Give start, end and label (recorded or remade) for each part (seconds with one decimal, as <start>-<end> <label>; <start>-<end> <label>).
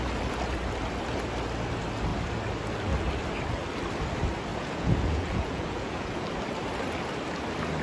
0.0-4.5 recorded; 4.5-6.2 remade; 6.2-7.8 recorded